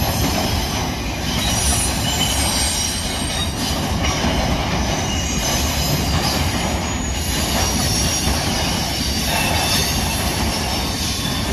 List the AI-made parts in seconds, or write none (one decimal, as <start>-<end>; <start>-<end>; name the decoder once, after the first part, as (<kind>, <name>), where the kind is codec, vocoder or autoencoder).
none